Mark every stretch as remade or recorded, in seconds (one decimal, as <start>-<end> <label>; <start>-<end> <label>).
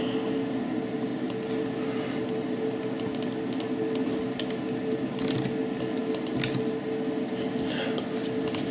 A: 0.0-8.7 recorded